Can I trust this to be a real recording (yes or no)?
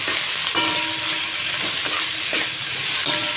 yes